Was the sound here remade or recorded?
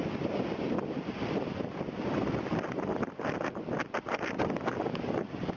recorded